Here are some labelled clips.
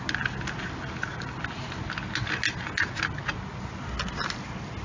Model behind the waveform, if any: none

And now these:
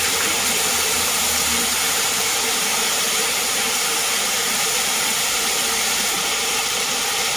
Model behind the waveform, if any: vocoder, BigVGAN v2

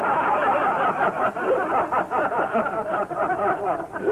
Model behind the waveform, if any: vocoder, BigVGAN v2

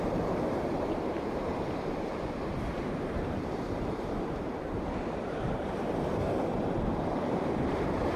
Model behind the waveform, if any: vocoder, BigVGAN v2